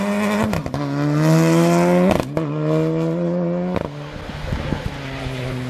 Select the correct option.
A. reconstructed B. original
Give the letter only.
B